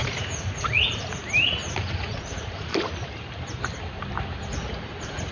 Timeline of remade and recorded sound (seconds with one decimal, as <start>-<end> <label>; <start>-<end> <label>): 0.0-1.2 remade; 1.2-1.8 recorded; 1.8-2.7 remade; 2.7-4.5 recorded; 4.5-5.3 remade